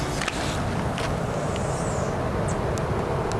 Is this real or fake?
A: real